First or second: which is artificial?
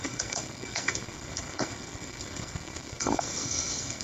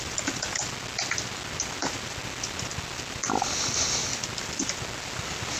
first